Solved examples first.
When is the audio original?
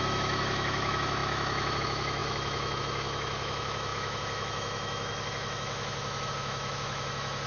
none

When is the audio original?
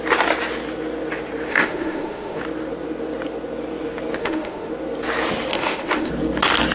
0.0-1.5; 2.4-4.2; 4.7-5.5; 6.1-6.7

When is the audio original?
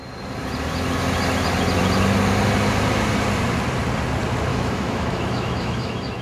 0.0-4.5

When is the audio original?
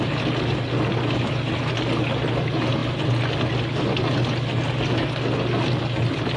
0.0-6.4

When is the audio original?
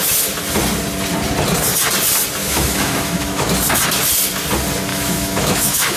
0.0-2.4; 3.5-4.9